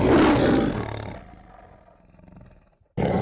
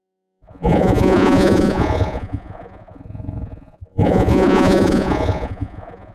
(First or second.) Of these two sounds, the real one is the first